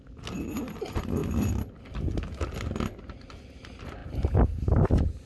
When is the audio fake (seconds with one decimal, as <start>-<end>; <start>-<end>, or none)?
none